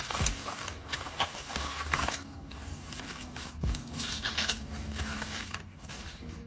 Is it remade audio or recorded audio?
remade